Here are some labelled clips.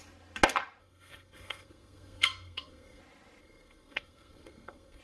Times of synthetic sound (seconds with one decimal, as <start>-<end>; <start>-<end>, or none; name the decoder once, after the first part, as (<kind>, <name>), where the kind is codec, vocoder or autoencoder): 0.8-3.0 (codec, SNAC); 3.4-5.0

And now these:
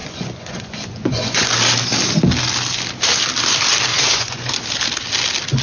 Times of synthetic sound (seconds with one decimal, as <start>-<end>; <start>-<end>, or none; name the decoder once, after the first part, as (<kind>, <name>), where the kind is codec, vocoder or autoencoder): 0.0-1.5 (vocoder, Vocos); 3.9-4.5

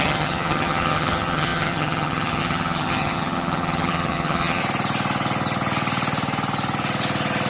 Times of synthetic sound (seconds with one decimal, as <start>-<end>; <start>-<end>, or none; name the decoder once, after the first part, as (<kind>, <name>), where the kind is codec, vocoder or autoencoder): 0.0-4.6 (vocoder, HiFi-GAN)